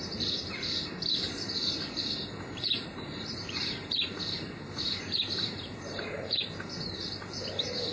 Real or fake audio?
fake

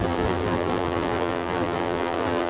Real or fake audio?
fake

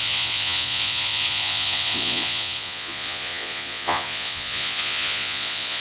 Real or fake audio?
fake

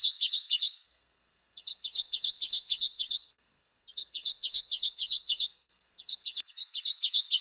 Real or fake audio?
fake